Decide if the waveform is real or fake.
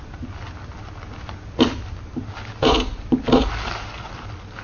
real